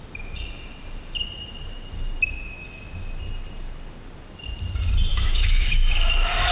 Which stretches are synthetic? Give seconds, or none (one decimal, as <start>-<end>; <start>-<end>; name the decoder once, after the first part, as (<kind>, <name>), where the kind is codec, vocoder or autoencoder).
5.1-5.7 (autoencoder, DAC-VAE)